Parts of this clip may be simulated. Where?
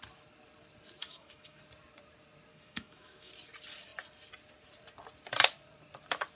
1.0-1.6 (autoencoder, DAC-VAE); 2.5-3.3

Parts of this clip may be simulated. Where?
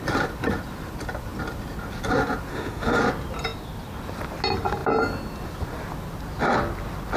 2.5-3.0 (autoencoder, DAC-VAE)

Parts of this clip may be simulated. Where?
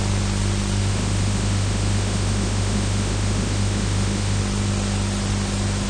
0.9-4.4 (autoencoder, DAC-VAE)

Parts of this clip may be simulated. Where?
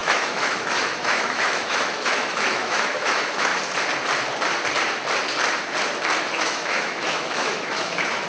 0.0-3.5 (autoencoder, DAC-VAE); 6.3-8.3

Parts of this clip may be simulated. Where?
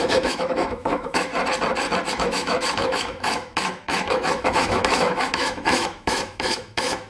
0.0-1.3 (autoencoder, DAC-VAE); 2.1-7.1